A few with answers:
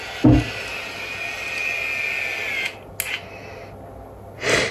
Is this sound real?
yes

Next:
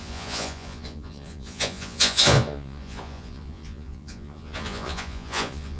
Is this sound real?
no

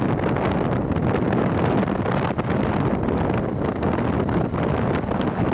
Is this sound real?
yes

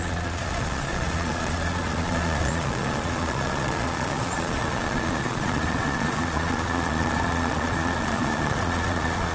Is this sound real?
no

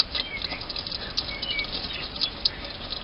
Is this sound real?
yes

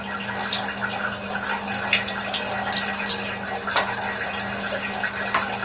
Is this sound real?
yes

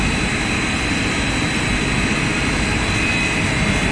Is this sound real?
yes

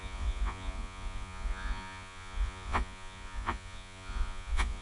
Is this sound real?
no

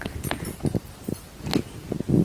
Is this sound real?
yes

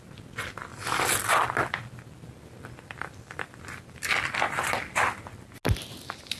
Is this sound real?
yes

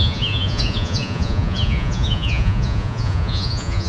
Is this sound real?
no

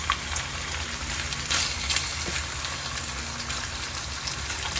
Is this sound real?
yes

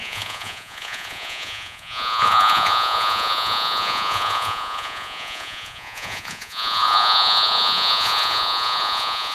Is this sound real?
no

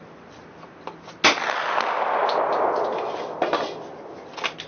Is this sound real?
yes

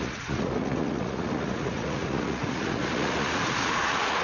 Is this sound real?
no